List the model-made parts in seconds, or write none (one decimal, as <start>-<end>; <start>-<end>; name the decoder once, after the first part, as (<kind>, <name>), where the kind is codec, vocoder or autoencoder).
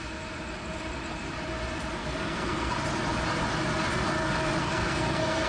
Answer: 2.0-2.7 (codec, SNAC); 4.6-5.5